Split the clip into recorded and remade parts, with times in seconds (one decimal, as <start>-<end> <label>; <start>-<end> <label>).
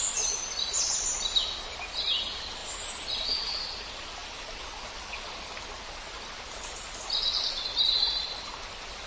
0.0-9.1 recorded